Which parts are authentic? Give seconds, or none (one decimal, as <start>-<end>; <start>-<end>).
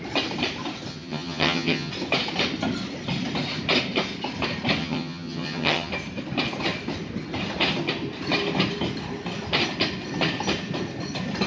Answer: 0.0-0.9; 1.9-4.8; 5.9-11.5